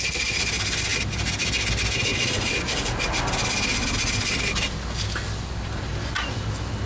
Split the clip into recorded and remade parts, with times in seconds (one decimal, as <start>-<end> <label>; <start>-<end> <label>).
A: 0.0-2.1 recorded; 2.1-3.0 remade; 3.0-6.9 recorded